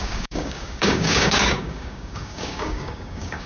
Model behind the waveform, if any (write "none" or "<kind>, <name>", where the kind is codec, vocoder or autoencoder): codec, DAC